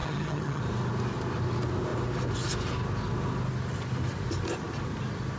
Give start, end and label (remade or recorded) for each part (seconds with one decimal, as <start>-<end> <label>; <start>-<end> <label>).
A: 0.0-0.6 remade; 0.6-5.4 recorded